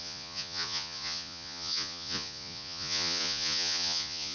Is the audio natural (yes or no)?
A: no